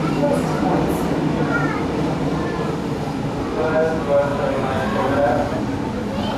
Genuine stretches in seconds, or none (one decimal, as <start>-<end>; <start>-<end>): 0.0-1.8; 2.5-6.4